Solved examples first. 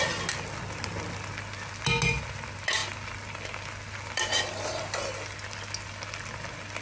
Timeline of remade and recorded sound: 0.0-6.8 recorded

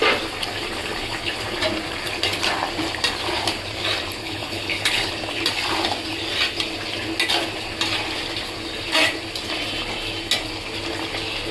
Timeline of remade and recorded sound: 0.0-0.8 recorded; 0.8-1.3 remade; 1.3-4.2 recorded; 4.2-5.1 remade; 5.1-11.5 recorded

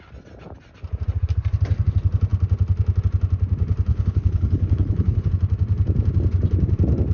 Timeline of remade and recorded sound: 0.0-3.9 recorded; 3.9-5.3 remade; 5.3-7.1 recorded